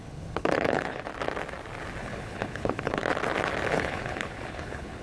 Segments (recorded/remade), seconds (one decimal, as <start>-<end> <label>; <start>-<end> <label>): 0.0-1.1 remade; 1.1-2.0 recorded; 2.0-3.0 remade; 3.0-3.7 recorded; 3.7-5.0 remade